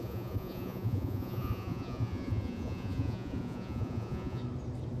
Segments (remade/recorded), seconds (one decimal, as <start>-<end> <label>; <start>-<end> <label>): 0.0-4.4 remade; 4.4-5.0 recorded